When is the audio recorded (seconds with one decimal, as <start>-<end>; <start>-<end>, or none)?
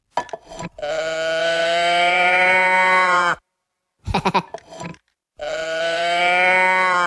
0.0-1.4; 3.4-4.9; 6.2-7.1